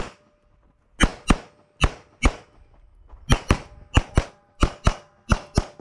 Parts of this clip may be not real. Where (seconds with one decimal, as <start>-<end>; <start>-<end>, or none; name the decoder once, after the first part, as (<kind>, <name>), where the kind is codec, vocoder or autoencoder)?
none